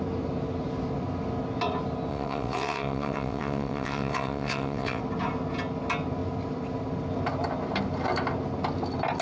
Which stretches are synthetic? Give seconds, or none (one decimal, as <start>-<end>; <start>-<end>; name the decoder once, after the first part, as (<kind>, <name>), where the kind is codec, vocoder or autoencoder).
2.1-5.0 (vocoder, WaveNeXt)